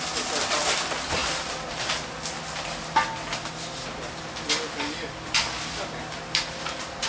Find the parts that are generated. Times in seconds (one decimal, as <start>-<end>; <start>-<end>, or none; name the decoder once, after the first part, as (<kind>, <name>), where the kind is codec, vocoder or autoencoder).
none